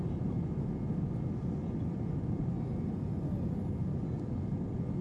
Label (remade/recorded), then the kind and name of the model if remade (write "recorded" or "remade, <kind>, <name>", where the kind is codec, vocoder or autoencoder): recorded